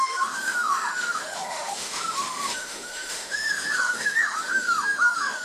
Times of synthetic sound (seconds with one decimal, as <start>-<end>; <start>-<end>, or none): 0.0-5.4